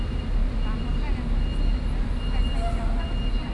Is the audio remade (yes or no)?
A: no